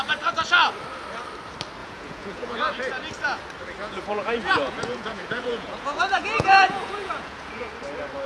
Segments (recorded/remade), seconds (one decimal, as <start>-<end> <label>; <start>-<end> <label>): 0.0-1.8 recorded; 1.8-2.6 remade; 2.6-3.8 recorded; 3.8-7.7 remade; 7.7-8.3 recorded